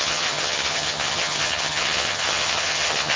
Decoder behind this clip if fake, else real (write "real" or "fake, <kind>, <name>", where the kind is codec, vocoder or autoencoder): fake, vocoder, HiFi-GAN